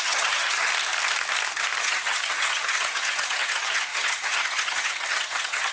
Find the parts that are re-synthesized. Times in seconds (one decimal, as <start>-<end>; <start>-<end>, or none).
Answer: 0.0-0.7; 1.8-5.7